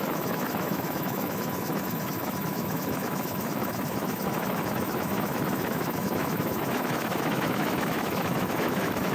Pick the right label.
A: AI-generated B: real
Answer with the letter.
A